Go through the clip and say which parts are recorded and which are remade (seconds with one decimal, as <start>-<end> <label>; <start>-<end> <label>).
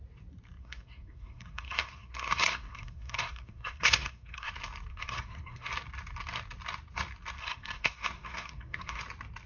0.0-0.6 recorded; 0.6-4.5 remade; 4.5-4.9 recorded; 4.9-5.7 remade; 5.7-7.4 recorded; 7.4-9.0 remade; 9.0-9.5 recorded